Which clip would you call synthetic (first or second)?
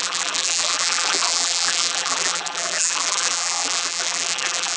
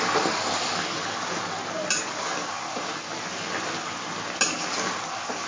first